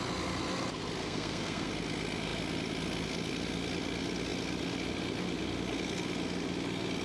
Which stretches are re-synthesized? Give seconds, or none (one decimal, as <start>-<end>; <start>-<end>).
1.0-1.7